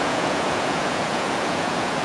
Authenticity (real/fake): fake